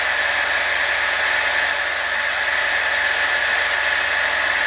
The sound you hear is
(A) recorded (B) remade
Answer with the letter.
A